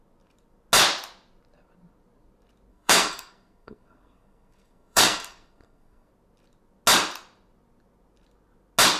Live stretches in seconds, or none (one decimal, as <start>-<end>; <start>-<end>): 0.0-2.7; 6.1-9.0